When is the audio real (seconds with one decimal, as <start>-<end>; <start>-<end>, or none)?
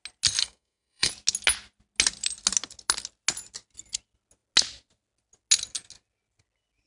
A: 0.0-0.4; 1.1-6.9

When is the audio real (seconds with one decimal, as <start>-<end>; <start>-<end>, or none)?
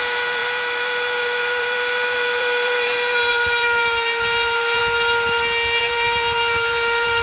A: 4.8-5.8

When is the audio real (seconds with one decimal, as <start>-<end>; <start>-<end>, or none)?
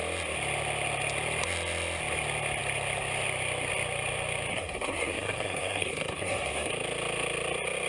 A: 0.0-4.5; 6.7-7.9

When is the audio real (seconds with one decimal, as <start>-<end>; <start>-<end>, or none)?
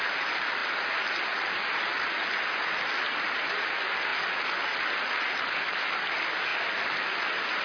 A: 0.0-7.6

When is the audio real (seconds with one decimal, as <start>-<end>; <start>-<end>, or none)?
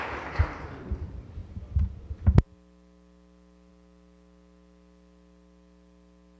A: 0.0-6.4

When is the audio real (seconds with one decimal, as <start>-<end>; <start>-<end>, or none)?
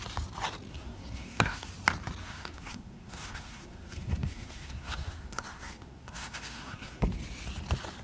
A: 0.0-0.7; 1.7-2.2; 7.0-8.0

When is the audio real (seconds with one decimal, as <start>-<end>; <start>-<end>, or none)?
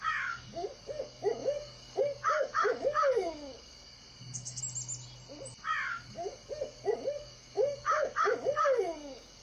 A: 4.6-5.9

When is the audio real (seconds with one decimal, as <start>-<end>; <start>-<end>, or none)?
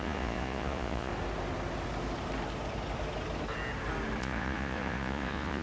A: 1.1-4.2